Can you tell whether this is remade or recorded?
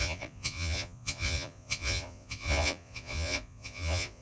remade